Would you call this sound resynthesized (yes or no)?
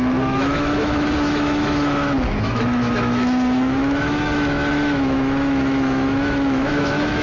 yes